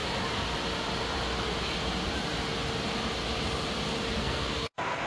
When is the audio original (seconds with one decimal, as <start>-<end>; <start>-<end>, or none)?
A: 0.0-4.2